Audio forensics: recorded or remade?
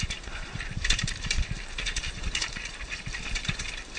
remade